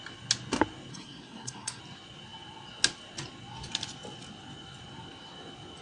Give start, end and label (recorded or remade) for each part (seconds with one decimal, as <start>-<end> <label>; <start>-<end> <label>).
0.0-0.9 recorded; 0.9-1.8 remade; 1.8-5.8 recorded